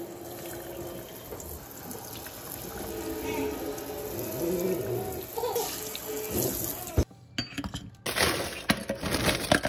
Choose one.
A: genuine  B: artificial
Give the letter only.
A